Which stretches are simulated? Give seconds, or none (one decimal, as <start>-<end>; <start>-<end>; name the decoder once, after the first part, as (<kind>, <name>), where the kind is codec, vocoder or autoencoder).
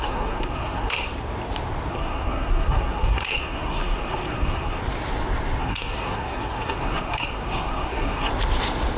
0.0-1.1 (codec, SNAC); 1.9-4.8; 5.6-8.3